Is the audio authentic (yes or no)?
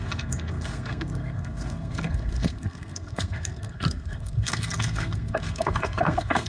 no